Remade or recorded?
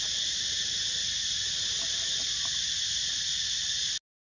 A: recorded